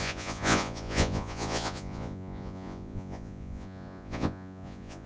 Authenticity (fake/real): fake